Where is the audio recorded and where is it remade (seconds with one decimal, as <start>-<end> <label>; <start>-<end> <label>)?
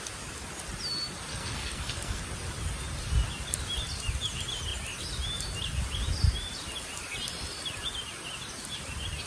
0.0-1.3 recorded; 1.3-2.2 remade; 2.2-9.3 recorded